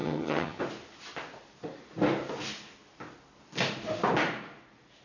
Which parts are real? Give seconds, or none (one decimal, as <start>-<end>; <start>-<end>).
0.6-5.0